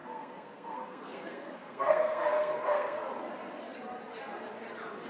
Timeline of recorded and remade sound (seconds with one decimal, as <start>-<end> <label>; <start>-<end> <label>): 0.0-3.1 remade; 3.1-5.1 recorded